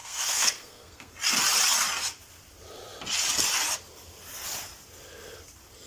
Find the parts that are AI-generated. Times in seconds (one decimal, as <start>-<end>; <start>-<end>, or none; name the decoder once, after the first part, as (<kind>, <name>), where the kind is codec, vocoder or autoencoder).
0.0-1.1 (codec, SNAC)